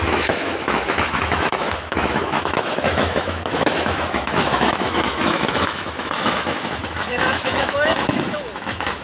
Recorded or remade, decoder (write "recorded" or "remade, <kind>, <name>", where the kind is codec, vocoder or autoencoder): remade, autoencoder, DAC-VAE